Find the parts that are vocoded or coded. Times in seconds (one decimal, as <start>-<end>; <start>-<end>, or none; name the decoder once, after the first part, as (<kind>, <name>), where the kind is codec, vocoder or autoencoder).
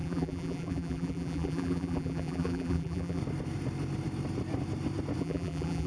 0.0-3.2 (vocoder, BigVGAN v2); 5.2-5.9